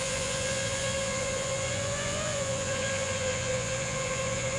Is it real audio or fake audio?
fake